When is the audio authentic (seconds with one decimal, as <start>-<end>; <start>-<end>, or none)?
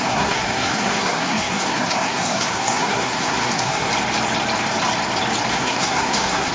3.9-5.5